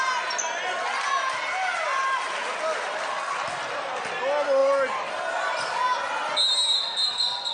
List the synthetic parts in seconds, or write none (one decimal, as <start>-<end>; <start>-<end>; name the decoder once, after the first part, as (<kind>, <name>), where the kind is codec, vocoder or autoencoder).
none